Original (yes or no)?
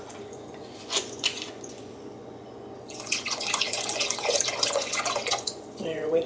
no